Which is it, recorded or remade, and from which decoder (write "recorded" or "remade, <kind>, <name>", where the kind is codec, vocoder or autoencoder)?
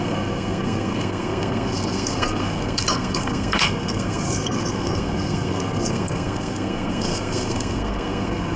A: remade, codec, SNAC